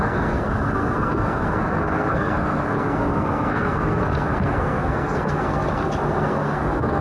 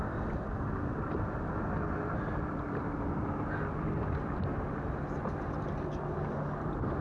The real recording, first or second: second